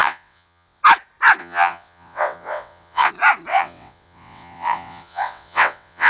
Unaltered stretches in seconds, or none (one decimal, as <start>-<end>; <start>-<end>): 0.8-1.4; 3.1-3.5